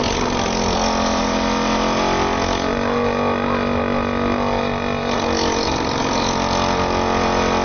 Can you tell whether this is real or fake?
real